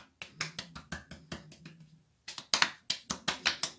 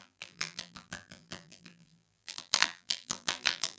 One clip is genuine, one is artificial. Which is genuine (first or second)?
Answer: first